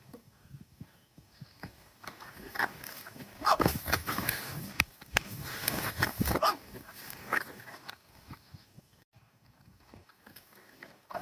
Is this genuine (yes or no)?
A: no